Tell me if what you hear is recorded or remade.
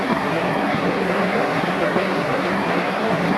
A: remade